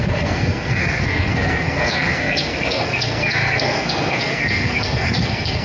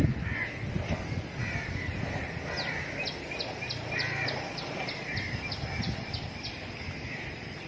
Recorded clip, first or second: second